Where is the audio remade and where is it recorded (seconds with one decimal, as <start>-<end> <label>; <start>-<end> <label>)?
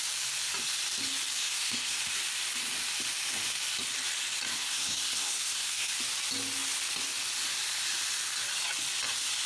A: 0.0-1.4 recorded; 1.4-2.0 remade; 2.0-4.5 recorded; 4.5-5.9 remade; 5.9-9.5 recorded